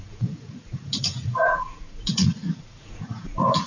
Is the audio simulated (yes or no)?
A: yes